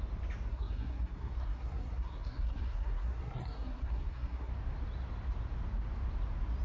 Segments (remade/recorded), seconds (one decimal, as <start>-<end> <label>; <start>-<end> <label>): 0.0-0.5 recorded; 0.5-4.5 remade; 4.5-6.6 recorded